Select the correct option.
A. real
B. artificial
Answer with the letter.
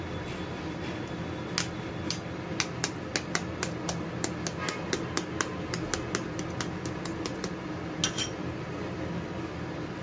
A